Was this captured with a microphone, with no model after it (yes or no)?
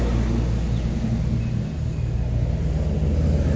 yes